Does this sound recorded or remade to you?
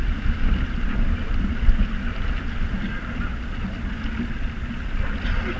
recorded